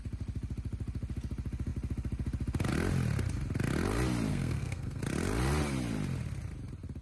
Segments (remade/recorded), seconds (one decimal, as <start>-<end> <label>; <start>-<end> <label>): 0.0-4.3 recorded; 4.3-5.0 remade; 5.0-7.0 recorded